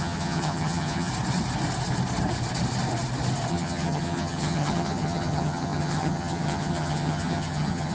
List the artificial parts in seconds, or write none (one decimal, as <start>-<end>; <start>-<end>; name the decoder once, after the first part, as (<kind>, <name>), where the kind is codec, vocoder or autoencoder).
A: 0.0-1.1 (vocoder, HiFi-GAN); 3.5-7.9